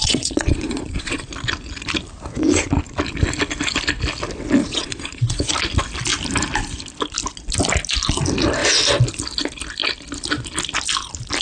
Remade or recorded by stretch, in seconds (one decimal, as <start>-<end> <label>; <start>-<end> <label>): 0.0-1.3 remade; 1.3-4.6 recorded; 4.6-5.5 remade; 5.5-11.4 recorded